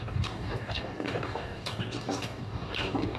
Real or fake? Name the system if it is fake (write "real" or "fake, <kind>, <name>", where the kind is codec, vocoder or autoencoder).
fake, codec, DAC